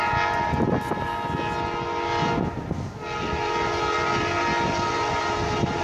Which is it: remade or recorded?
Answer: recorded